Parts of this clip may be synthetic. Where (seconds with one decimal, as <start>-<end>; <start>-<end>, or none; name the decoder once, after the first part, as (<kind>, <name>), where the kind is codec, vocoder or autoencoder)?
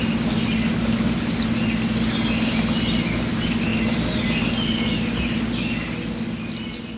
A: none